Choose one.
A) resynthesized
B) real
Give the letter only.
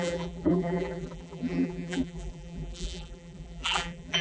A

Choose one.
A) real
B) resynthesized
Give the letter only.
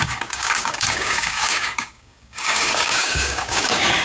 B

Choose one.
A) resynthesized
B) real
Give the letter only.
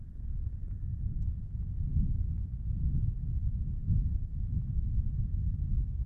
B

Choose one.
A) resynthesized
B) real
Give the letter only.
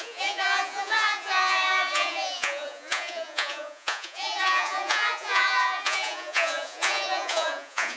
A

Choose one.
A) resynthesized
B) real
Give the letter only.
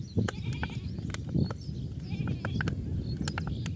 B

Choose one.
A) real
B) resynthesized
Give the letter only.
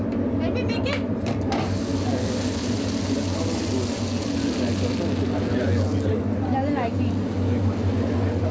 A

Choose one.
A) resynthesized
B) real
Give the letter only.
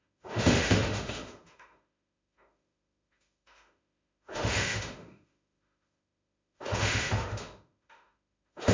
A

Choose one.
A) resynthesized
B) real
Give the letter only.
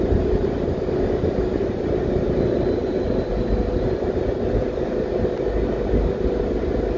B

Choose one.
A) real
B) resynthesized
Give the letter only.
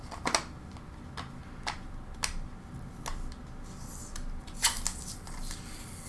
A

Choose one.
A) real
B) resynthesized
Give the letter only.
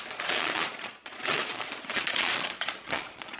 B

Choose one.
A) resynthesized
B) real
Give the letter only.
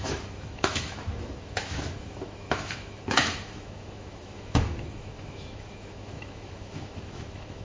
A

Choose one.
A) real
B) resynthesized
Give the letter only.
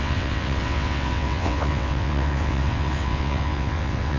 B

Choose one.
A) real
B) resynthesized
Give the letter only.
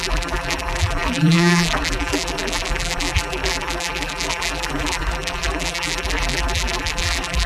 B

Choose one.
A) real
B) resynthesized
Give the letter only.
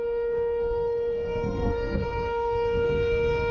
B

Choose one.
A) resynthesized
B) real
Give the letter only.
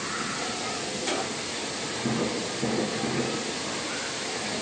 B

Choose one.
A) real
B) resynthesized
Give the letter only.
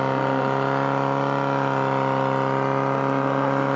A